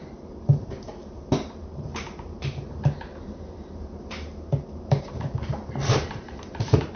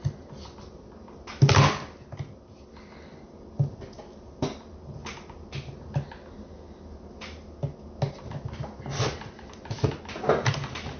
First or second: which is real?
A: second